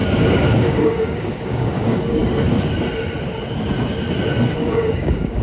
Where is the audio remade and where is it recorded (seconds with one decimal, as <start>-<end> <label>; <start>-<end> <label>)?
0.0-2.2 remade; 2.2-4.6 recorded; 4.6-5.4 remade

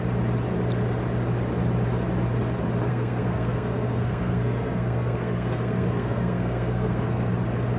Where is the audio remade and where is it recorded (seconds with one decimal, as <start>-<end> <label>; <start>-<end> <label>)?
0.0-2.9 recorded; 2.9-7.3 remade; 7.3-7.8 recorded

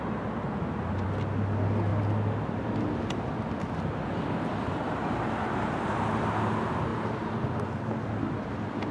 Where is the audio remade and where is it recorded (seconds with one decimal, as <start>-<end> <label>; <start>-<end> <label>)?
0.0-8.9 recorded

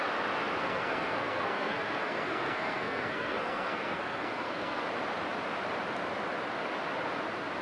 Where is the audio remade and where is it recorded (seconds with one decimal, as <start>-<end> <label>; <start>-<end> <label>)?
0.0-0.6 recorded; 0.6-4.8 remade; 4.8-7.6 recorded

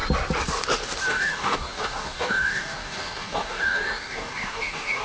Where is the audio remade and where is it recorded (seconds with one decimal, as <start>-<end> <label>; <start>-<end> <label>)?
0.0-1.1 recorded; 1.1-5.0 remade

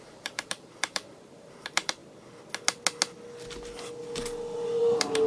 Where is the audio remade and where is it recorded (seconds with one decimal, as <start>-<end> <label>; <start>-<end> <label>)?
0.0-2.0 remade; 2.0-4.8 recorded; 4.8-5.3 remade